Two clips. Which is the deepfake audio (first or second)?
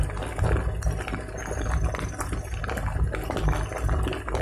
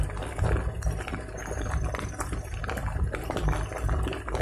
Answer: second